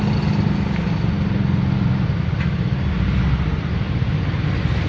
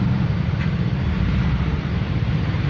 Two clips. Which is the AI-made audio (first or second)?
second